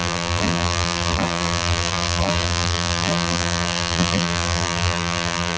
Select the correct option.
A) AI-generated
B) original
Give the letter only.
A